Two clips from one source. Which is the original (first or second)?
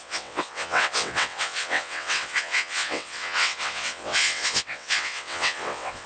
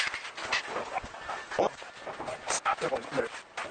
second